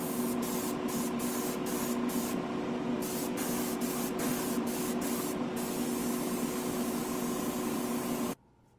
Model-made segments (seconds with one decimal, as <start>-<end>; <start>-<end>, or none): none